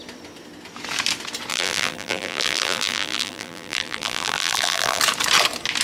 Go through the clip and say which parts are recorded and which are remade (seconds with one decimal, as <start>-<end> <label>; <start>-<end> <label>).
0.0-1.5 recorded; 1.5-5.0 remade; 5.0-5.8 recorded